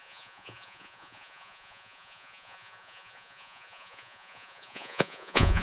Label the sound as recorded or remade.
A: remade